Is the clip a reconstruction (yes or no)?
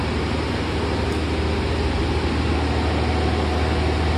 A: no